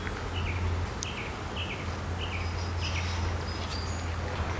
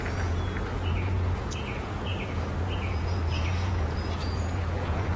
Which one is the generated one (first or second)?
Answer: second